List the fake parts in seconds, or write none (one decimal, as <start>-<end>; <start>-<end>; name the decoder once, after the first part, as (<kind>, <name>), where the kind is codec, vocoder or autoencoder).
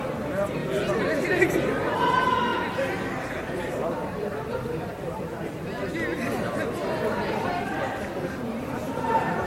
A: 0.0-0.6 (vocoder, BigVGAN v2); 1.4-2.5; 3.4-5.9; 8.0-9.5